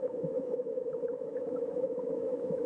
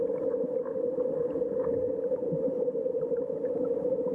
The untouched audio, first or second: second